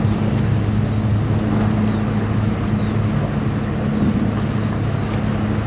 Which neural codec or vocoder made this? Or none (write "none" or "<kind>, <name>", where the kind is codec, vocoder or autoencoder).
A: none